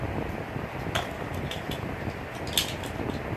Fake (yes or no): no